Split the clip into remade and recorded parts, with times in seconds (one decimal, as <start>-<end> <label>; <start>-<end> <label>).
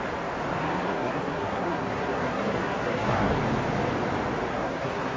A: 0.0-0.6 recorded; 0.6-3.4 remade; 3.4-4.5 recorded; 4.5-5.2 remade